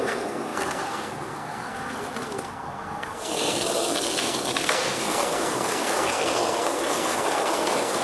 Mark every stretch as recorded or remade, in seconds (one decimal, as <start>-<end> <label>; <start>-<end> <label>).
0.0-8.0 remade